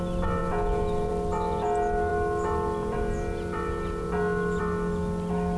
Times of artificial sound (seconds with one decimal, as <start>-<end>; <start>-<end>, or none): none